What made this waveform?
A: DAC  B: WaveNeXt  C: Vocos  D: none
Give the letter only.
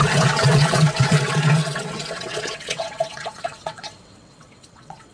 B